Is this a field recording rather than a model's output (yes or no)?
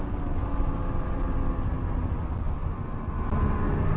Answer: yes